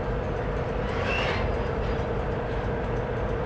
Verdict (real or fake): real